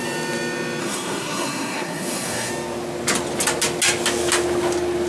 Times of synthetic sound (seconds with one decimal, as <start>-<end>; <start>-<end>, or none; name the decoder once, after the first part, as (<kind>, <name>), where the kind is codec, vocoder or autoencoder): 0.8-2.5 (codec, SNAC)